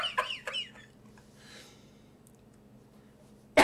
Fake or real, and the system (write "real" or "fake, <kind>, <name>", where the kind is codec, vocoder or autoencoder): real